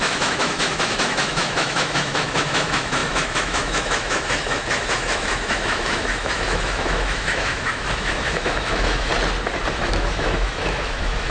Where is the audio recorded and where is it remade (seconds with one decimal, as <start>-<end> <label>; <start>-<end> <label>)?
0.0-9.1 remade; 9.1-9.7 recorded; 9.7-11.3 remade